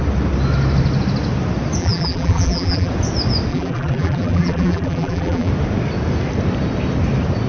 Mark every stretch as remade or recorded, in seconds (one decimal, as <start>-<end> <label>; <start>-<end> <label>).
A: 0.0-1.8 recorded; 1.8-2.9 remade; 2.9-3.5 recorded; 3.5-5.5 remade; 5.5-7.5 recorded